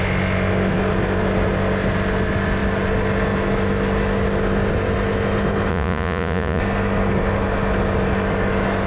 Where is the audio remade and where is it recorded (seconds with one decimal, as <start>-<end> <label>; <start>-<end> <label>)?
0.0-5.7 recorded; 5.7-6.6 remade; 6.6-8.9 recorded

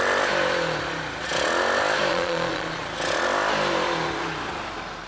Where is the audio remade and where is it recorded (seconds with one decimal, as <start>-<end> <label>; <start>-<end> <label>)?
0.0-2.1 recorded; 2.1-2.8 remade; 2.8-5.1 recorded

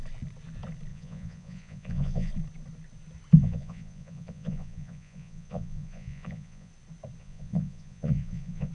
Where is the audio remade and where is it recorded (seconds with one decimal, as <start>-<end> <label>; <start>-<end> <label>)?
0.0-0.9 recorded; 0.9-2.3 remade; 2.3-3.4 recorded; 3.4-6.7 remade; 6.7-7.2 recorded; 7.2-8.7 remade

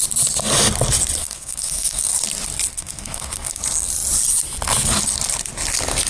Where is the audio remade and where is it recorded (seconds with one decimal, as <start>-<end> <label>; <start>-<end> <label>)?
0.0-1.2 recorded; 1.2-2.1 remade; 2.1-2.7 recorded; 2.7-3.6 remade; 3.6-6.1 recorded

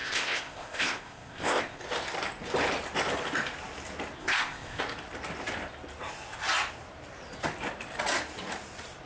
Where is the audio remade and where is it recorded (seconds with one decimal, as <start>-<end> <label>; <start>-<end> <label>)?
0.0-1.8 remade; 1.8-4.2 recorded; 4.2-4.8 remade; 4.8-9.1 recorded